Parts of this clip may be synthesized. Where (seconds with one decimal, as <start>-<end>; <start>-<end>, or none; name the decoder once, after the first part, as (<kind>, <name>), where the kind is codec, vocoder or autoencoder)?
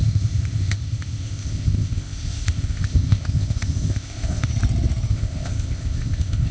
0.0-4.5 (codec, ZipCodec); 5.1-6.5